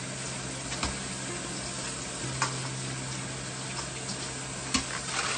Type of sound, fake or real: real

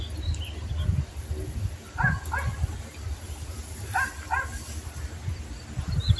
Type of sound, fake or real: real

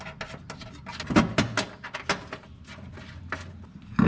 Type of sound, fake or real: real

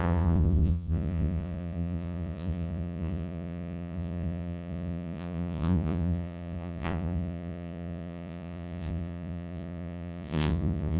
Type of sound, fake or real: fake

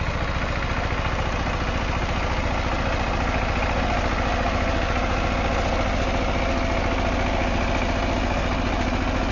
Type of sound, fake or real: real